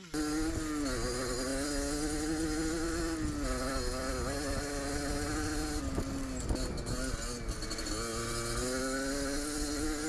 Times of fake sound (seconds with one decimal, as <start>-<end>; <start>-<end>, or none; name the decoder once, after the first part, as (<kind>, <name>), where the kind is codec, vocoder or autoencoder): none